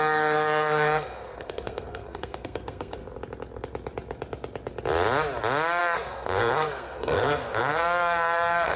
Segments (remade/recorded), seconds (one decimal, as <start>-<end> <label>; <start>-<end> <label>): 0.0-3.0 remade; 3.0-5.8 recorded; 5.8-8.8 remade